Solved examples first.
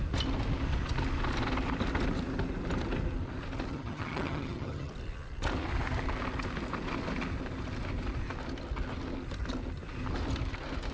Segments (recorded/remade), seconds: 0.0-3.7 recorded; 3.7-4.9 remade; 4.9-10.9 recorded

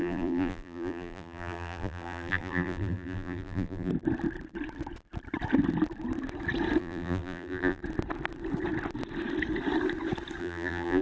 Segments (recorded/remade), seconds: 0.0-3.9 remade; 3.9-6.8 recorded; 6.8-7.8 remade; 7.8-10.4 recorded; 10.4-11.0 remade

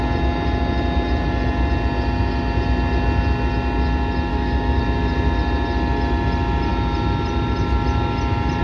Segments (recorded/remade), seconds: 0.0-4.3 recorded; 4.3-4.8 remade; 4.8-8.6 recorded

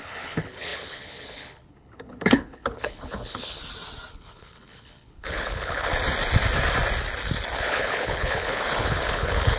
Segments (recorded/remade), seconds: 0.0-3.6 remade; 3.6-4.1 recorded; 4.1-5.9 remade; 5.9-7.6 recorded; 7.6-9.6 remade

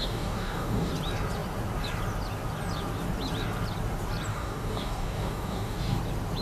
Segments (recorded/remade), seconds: 0.0-0.9 remade; 0.9-4.3 recorded; 4.3-6.0 remade; 6.0-6.4 recorded

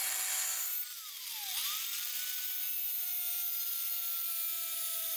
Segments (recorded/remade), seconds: 0.0-5.2 recorded

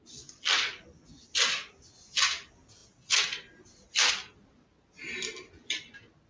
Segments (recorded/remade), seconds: 0.0-6.3 recorded